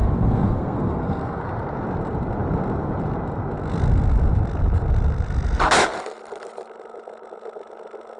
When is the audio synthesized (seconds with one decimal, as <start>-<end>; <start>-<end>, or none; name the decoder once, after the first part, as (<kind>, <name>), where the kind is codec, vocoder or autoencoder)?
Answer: 0.0-1.4 (codec, SNAC)